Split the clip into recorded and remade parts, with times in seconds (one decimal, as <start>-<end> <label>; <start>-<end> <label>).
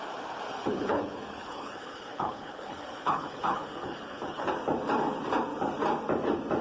0.0-0.5 recorded; 0.5-4.5 remade; 4.5-6.6 recorded